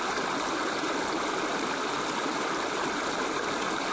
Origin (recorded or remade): recorded